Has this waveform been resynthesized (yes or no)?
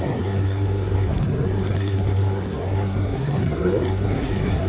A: yes